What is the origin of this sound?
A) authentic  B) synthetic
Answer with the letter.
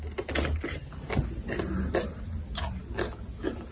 A